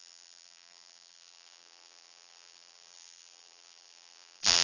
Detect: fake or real fake